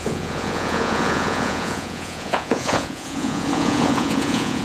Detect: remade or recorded remade